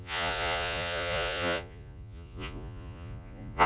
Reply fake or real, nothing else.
fake